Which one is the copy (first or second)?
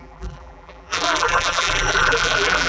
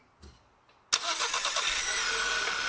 first